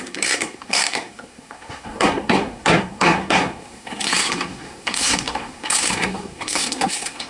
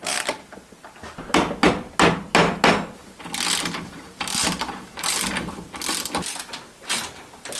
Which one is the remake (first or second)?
first